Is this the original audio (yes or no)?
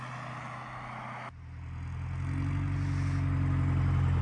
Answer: yes